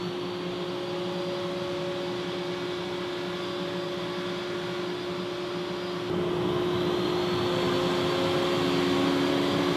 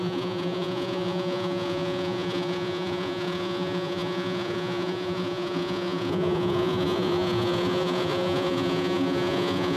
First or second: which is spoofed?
second